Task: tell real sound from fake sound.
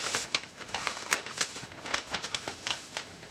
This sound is fake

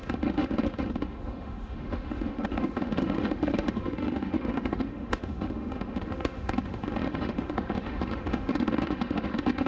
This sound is fake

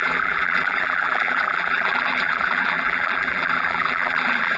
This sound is fake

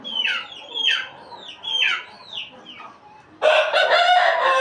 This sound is real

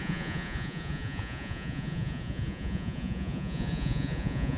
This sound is fake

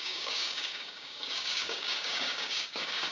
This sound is fake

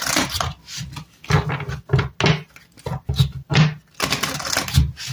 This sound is real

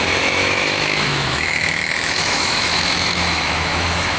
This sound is fake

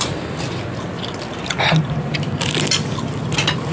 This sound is real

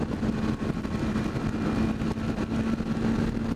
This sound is real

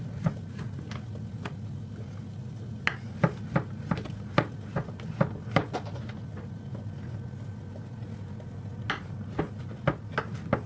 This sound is real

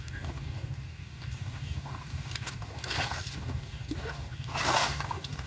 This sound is fake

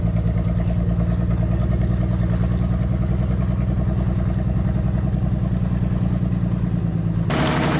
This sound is real